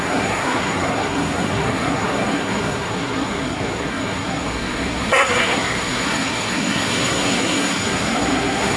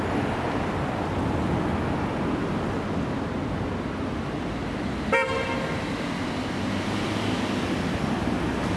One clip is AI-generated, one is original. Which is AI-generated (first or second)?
first